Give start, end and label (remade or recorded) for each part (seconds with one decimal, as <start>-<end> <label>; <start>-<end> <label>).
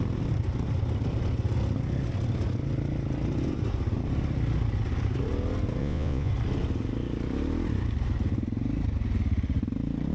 0.0-5.8 recorded; 5.8-6.3 remade; 6.3-10.1 recorded